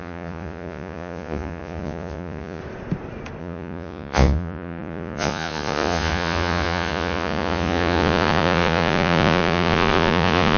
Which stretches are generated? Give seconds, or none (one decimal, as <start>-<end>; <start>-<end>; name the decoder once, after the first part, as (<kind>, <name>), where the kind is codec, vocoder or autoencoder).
0.0-2.6 (vocoder, Vocos); 3.4-10.6